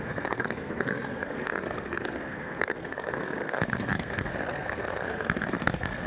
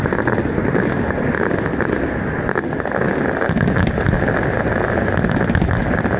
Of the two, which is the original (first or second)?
second